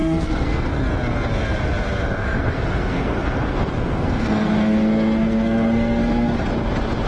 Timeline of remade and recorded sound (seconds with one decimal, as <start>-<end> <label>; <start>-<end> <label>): 0.0-0.8 remade; 0.8-2.2 recorded; 2.2-6.5 remade; 6.5-7.1 recorded